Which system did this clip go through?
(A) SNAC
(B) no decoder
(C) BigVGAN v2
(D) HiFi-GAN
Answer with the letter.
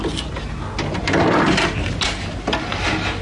B